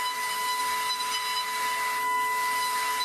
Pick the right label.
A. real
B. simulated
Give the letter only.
A